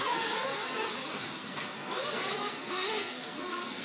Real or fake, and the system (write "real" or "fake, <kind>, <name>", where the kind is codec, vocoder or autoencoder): fake, codec, SNAC